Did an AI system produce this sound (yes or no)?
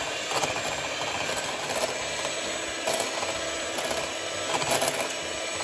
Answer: no